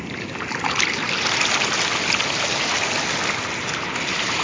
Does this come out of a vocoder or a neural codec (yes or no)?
no